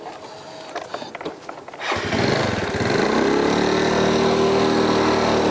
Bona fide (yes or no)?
yes